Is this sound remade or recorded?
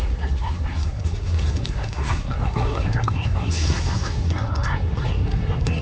remade